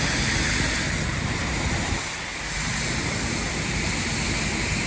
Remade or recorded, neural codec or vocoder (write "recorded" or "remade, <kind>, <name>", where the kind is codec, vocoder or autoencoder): recorded